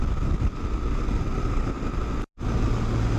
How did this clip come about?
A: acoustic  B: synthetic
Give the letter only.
A